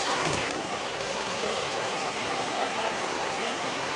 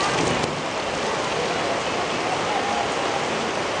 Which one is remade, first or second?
first